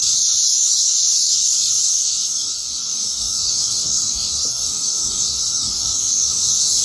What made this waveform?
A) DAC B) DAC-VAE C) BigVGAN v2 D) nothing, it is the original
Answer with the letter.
A